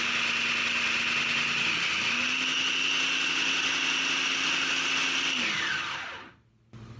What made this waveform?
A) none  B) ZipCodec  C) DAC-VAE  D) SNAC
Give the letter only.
A